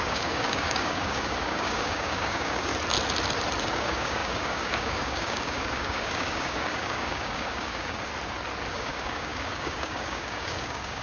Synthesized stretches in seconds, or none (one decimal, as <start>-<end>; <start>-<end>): 0.0-2.7; 3.6-8.1; 8.7-11.0